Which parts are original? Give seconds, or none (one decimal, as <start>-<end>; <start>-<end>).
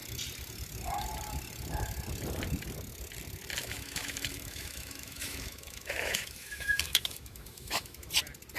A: 0.0-3.6; 8.1-8.6